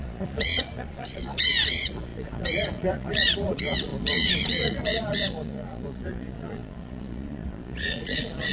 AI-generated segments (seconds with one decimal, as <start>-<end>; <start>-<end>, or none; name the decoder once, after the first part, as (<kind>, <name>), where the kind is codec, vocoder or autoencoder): 0.0-8.5 (vocoder, Vocos)